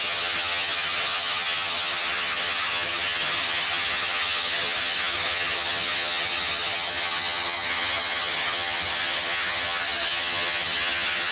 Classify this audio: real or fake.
fake